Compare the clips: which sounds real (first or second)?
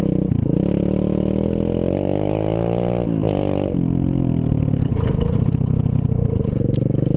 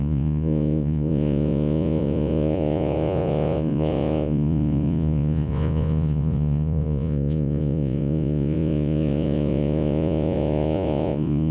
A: first